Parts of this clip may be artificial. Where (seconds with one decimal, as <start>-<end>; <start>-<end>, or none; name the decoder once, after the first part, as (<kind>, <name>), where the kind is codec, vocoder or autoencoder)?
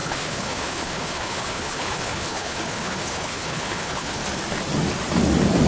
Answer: 0.0-4.2 (codec, HILCodec)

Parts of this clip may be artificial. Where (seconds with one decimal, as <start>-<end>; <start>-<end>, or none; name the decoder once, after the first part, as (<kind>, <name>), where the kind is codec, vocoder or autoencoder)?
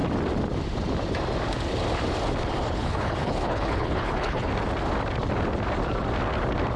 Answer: 2.7-4.5 (codec, HILCodec)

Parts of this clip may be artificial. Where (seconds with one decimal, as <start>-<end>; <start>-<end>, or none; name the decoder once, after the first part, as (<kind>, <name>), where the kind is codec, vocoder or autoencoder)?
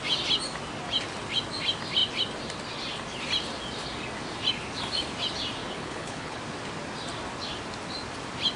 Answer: 5.6-6.4 (codec, HILCodec)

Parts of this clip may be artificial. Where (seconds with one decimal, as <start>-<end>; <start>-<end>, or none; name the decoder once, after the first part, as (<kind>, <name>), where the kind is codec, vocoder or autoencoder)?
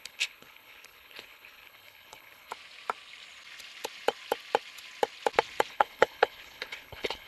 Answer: 0.0-2.5 (codec, HILCodec); 5.7-7.3